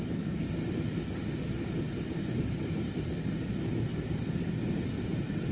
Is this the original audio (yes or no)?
yes